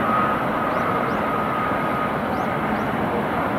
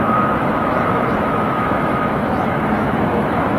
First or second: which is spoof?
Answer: second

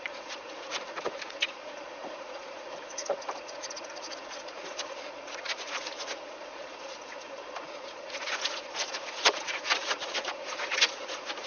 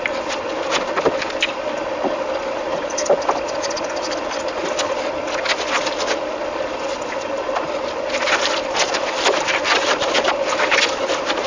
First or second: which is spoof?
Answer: first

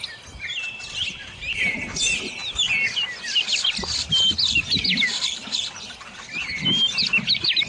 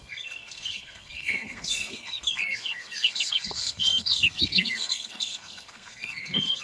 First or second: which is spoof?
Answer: second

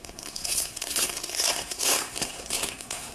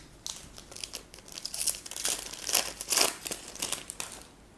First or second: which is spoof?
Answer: first